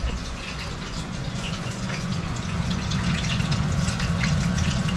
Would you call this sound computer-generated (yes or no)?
yes